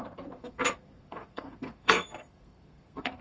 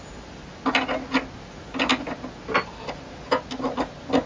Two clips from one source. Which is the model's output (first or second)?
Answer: first